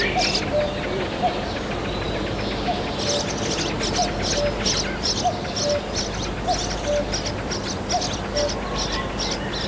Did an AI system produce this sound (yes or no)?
no